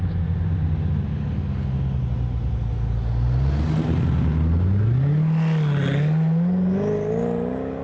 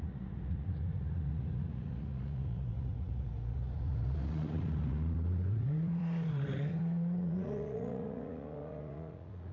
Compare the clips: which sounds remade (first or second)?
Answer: second